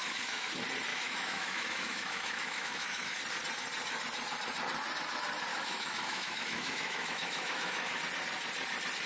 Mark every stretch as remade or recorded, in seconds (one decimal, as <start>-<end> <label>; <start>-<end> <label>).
0.0-0.5 remade; 0.5-0.9 recorded; 0.9-3.2 remade; 3.2-5.5 recorded; 5.5-8.0 remade; 8.0-9.1 recorded